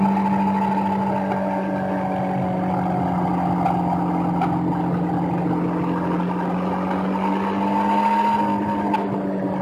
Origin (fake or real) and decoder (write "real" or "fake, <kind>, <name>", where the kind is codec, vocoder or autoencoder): real